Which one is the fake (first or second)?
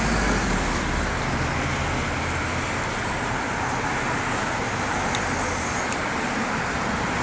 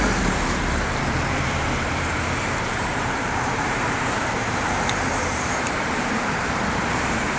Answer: second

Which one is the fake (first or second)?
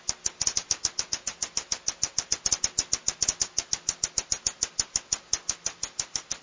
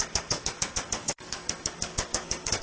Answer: second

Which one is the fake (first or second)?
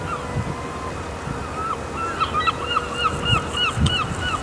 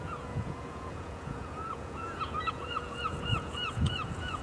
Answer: second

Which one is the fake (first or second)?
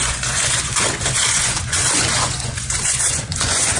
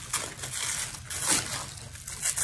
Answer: first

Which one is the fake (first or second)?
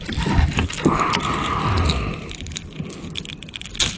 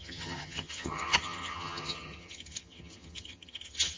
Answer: second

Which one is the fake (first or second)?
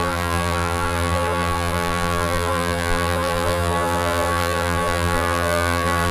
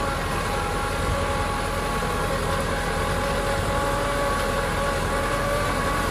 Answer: first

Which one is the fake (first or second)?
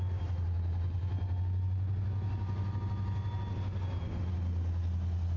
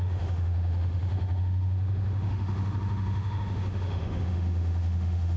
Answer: second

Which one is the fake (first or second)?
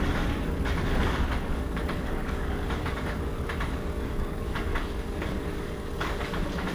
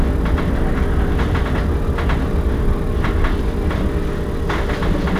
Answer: first